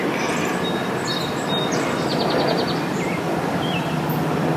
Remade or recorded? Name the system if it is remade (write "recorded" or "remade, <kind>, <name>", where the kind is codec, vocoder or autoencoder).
recorded